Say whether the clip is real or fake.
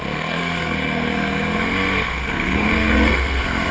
fake